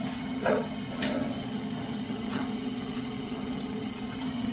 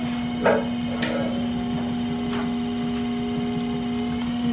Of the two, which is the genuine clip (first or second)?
second